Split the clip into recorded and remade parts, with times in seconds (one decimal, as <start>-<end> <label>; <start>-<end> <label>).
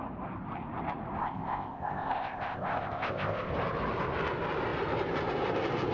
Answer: 0.0-1.2 recorded; 1.2-3.5 remade; 3.5-5.9 recorded